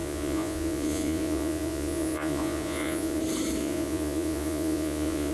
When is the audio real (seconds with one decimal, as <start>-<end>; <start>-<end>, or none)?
3.2-3.6